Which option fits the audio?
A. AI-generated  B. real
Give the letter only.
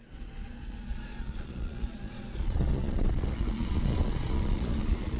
A